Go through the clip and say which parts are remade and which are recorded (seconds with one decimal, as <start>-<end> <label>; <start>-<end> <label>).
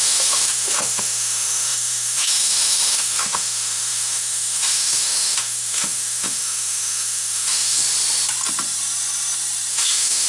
0.0-7.8 remade; 7.8-9.7 recorded; 9.7-10.3 remade